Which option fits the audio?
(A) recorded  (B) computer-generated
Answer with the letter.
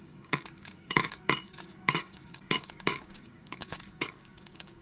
B